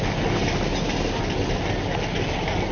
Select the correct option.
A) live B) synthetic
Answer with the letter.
A